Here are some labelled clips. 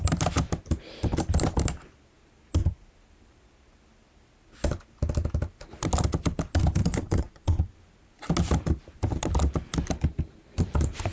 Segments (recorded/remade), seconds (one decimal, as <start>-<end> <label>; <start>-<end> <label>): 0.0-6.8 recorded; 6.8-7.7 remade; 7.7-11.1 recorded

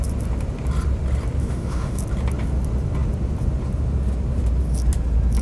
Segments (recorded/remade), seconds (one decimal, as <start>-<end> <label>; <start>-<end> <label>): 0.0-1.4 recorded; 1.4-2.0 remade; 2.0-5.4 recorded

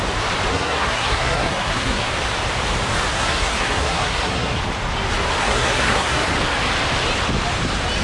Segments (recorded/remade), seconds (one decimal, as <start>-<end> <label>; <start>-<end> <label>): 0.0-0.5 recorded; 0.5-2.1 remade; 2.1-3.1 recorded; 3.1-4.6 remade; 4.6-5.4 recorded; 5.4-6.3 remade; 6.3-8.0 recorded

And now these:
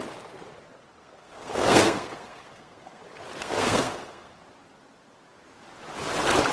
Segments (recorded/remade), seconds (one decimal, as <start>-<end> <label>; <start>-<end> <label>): 0.0-1.0 recorded; 1.0-3.0 remade; 3.0-3.4 recorded; 3.4-4.4 remade; 4.4-6.5 recorded

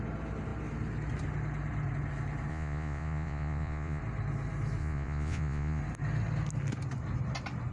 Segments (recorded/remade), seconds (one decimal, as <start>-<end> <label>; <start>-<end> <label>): 0.0-2.5 recorded; 2.5-4.0 remade; 4.0-4.8 recorded; 4.8-5.8 remade; 5.8-7.7 recorded

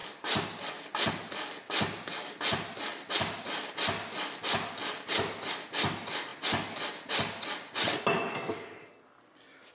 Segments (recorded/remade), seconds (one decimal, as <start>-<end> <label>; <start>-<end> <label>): 0.0-9.7 recorded